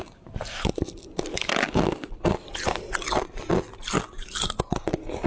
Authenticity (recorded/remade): recorded